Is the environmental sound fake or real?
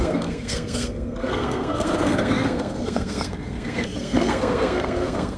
fake